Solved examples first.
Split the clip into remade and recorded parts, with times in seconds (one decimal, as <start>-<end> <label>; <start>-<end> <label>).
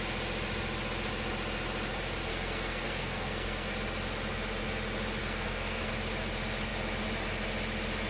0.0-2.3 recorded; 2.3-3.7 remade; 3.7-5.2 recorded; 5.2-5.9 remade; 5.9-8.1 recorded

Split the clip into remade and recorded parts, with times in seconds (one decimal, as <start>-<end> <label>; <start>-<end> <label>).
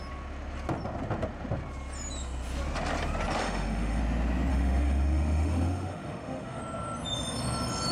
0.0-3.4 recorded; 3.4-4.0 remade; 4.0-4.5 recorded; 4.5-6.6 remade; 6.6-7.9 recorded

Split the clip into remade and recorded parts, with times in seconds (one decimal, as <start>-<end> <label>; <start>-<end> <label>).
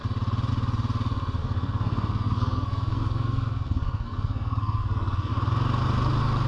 0.0-1.4 recorded; 1.4-5.3 remade; 5.3-6.5 recorded